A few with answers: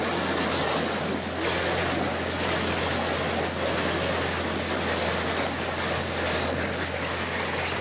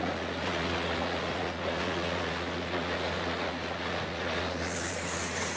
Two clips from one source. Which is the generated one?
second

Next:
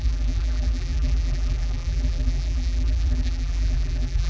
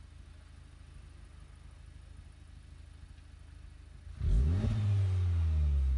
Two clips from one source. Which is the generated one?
first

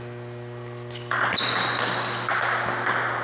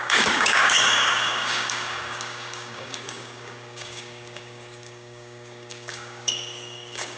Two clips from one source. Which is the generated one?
second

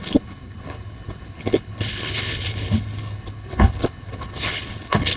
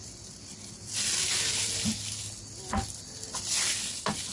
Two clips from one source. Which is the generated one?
first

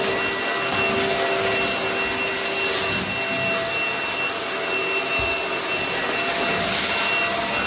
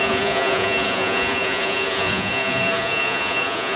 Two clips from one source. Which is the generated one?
second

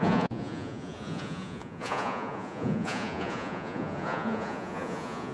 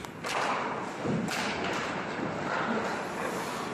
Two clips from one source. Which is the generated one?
first